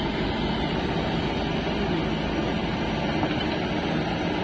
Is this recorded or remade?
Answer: recorded